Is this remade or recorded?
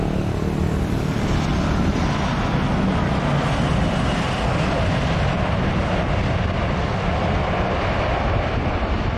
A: recorded